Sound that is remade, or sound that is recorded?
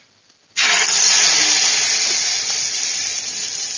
recorded